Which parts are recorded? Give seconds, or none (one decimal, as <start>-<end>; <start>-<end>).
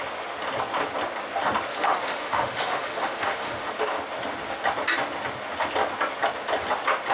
0.0-1.7; 3.7-7.1